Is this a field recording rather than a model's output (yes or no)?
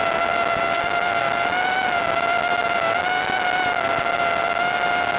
yes